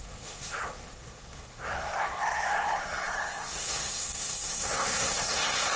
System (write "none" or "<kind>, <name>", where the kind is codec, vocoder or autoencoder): codec, SNAC